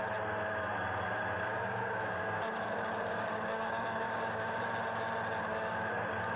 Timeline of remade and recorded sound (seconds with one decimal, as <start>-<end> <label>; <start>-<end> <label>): 0.0-1.5 recorded; 1.5-4.6 remade; 4.6-6.4 recorded